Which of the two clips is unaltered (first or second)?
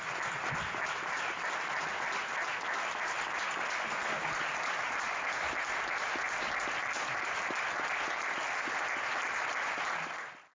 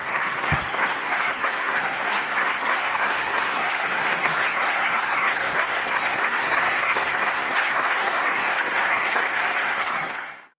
first